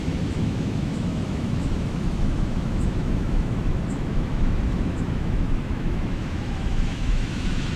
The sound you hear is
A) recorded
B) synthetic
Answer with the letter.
B